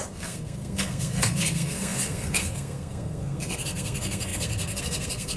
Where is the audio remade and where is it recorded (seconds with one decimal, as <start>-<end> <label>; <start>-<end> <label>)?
0.0-5.4 remade